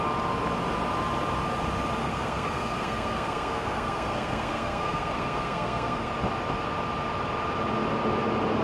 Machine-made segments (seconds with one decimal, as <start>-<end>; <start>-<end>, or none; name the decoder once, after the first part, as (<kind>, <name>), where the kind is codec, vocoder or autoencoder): 2.0-6.1 (codec, SNAC)